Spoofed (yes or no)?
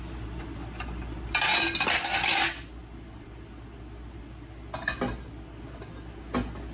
no